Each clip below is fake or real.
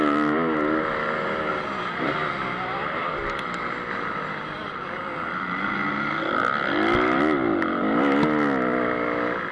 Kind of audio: real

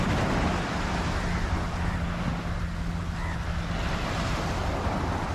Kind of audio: real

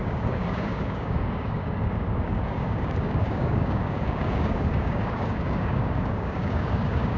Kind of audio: fake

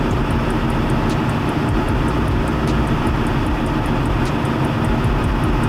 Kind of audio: real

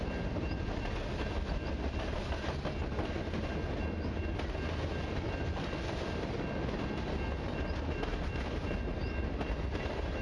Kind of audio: real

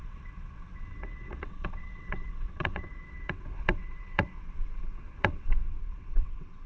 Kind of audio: fake